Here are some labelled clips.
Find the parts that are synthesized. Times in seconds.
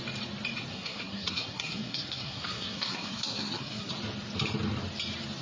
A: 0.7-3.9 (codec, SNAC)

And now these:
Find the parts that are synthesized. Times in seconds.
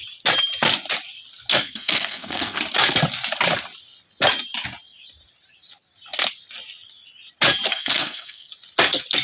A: 1.5-2.6 (codec, SNAC); 7.7-8.5